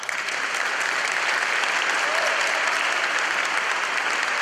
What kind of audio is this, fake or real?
real